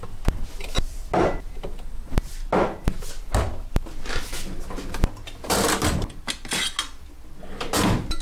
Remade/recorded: recorded